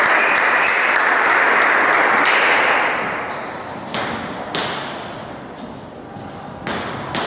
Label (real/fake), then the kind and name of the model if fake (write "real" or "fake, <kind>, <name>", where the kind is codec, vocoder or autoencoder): real